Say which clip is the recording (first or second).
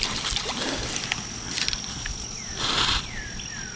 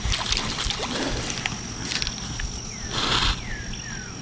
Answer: second